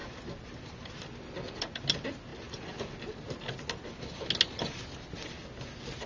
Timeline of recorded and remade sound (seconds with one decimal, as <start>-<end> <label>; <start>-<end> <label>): 0.0-6.1 recorded